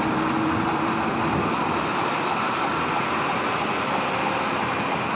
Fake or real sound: real